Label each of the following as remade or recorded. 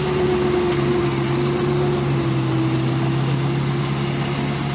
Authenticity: recorded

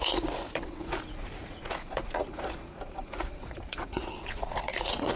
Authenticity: remade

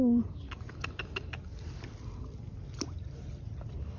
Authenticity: recorded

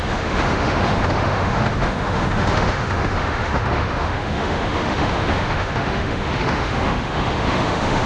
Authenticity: remade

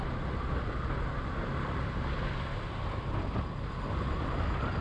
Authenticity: recorded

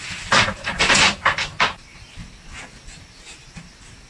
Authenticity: recorded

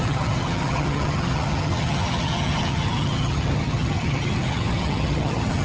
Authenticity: remade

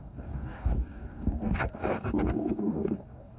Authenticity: remade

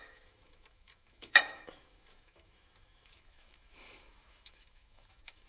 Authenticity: remade